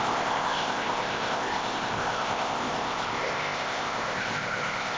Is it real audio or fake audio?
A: fake